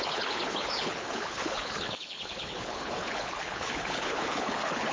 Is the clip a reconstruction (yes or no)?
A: yes